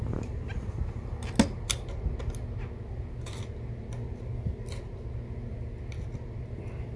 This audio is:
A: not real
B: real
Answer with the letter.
B